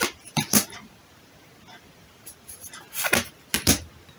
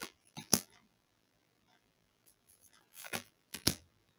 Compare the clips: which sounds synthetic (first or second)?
second